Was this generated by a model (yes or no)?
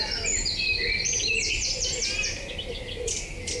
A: no